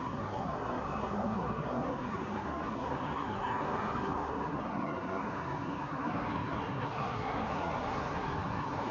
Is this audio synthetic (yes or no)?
yes